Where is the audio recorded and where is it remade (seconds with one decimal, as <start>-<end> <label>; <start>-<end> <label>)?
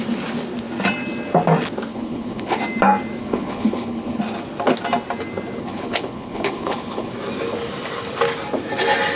0.0-1.9 recorded; 1.9-2.6 remade; 2.6-3.2 recorded; 3.2-4.2 remade; 4.2-5.6 recorded; 5.6-7.1 remade; 7.1-9.2 recorded